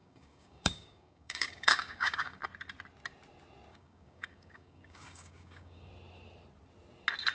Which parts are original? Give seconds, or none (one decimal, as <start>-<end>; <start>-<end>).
2.4-3.7; 5.9-7.3